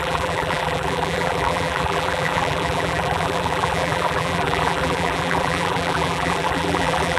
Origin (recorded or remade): remade